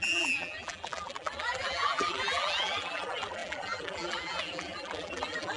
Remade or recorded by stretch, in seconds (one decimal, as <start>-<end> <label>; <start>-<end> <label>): 0.0-5.6 remade